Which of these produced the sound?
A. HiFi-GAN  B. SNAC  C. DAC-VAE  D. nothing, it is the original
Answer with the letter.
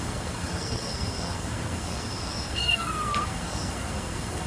B